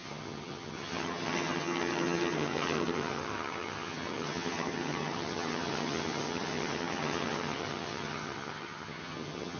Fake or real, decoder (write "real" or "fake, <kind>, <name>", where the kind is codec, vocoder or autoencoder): fake, vocoder, HiFi-GAN